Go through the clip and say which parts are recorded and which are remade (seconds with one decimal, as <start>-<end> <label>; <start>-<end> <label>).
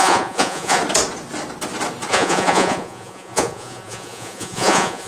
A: 0.0-0.8 remade; 0.8-2.1 recorded; 2.1-5.1 remade